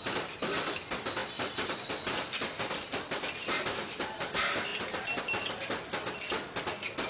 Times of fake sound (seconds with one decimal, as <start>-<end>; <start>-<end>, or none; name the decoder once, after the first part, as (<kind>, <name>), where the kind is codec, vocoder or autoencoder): 1.2-1.9 (vocoder, BigVGAN v2)